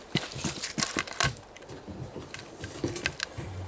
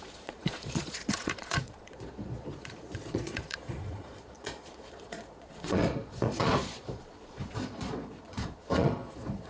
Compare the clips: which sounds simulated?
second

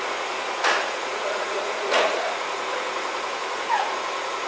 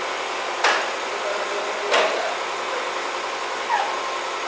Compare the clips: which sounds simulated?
first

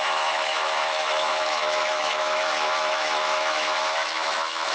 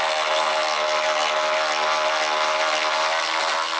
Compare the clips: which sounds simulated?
first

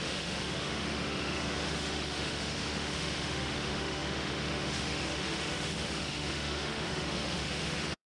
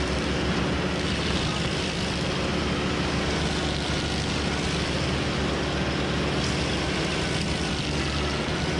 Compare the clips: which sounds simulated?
first